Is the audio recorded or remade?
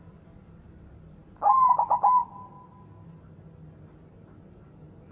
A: recorded